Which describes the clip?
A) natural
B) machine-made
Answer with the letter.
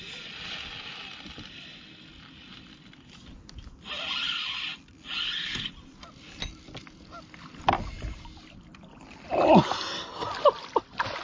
A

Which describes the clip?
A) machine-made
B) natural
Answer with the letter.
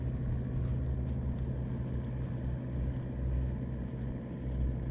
B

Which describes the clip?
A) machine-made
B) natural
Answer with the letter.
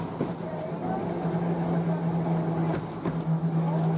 B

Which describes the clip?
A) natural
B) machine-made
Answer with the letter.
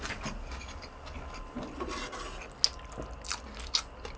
A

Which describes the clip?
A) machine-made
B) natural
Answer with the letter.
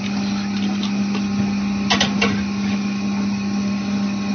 B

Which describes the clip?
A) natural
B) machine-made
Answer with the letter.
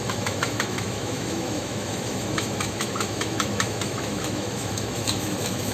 B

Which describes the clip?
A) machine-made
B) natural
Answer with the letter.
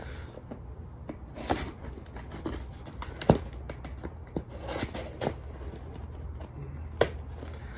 B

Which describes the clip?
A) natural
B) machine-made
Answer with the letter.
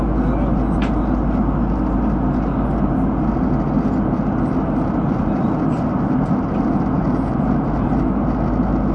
A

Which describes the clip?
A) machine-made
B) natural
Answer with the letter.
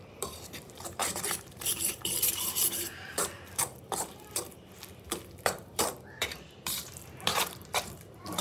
A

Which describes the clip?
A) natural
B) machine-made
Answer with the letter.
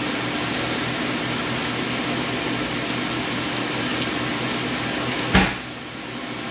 A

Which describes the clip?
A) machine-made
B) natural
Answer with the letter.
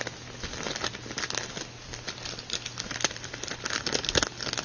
B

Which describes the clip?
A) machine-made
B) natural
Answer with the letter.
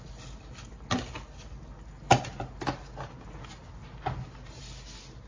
B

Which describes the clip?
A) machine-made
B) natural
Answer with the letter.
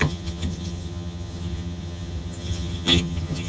A